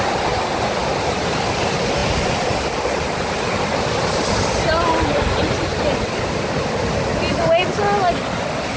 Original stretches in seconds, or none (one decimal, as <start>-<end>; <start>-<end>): 0.0-0.8; 1.6-2.0; 3.0-8.8

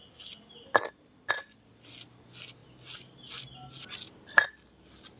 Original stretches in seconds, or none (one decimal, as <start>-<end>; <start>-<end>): 0.0-5.2

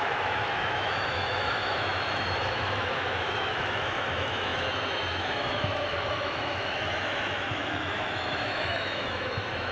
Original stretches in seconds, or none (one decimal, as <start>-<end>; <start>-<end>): none

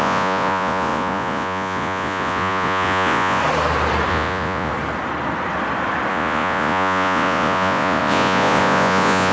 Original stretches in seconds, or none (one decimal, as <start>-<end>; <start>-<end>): 3.4-4.1; 4.7-6.1

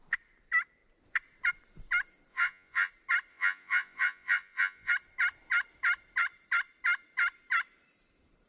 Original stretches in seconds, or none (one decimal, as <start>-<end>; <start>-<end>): 0.0-2.3; 2.9-3.3; 4.9-8.5